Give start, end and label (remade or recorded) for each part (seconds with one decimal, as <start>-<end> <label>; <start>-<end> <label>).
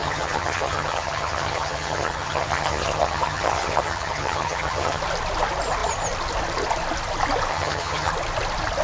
0.0-5.0 remade; 5.0-7.5 recorded; 7.5-8.1 remade; 8.1-8.8 recorded